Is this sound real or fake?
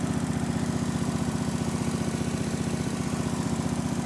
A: fake